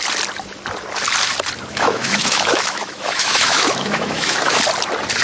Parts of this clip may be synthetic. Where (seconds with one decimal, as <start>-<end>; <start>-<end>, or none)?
1.7-4.6